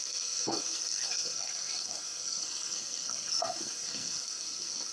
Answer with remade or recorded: remade